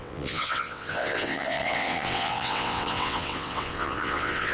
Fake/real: fake